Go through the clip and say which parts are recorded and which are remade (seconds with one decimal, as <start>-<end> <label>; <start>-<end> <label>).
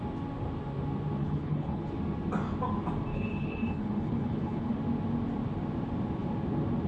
0.0-1.2 recorded; 1.2-1.9 remade; 1.9-3.1 recorded; 3.1-4.7 remade; 4.7-6.9 recorded